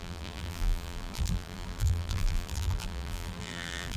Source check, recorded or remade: remade